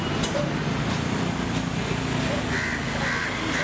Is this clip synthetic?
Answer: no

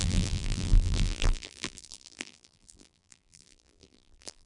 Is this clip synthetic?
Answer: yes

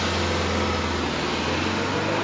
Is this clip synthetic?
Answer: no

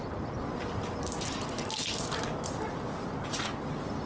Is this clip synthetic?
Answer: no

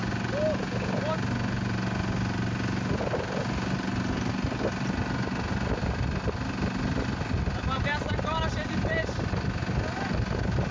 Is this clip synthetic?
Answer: no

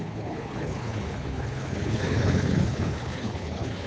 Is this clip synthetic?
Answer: yes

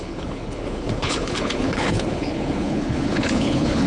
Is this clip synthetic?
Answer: yes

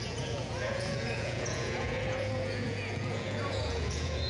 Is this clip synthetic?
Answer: yes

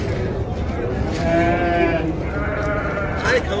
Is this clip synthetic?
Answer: no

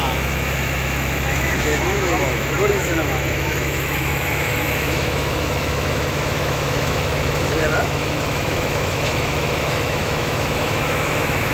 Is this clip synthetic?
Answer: yes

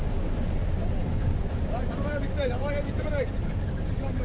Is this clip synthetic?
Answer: no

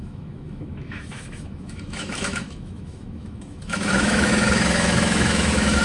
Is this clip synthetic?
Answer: yes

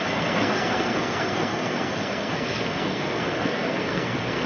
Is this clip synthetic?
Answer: yes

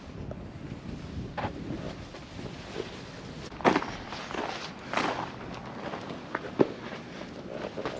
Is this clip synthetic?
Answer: no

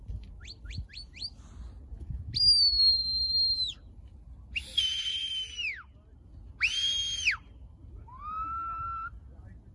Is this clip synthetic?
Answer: no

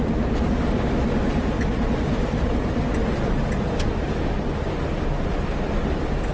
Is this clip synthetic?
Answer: no